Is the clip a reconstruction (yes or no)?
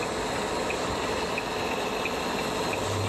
no